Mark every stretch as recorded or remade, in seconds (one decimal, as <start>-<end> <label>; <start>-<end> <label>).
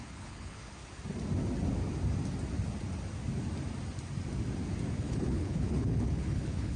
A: 0.0-0.8 remade; 0.8-4.9 recorded; 4.9-6.8 remade